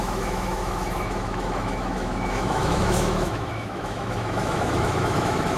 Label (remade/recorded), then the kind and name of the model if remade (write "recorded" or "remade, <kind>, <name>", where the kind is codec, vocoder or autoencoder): remade, autoencoder, DAC-VAE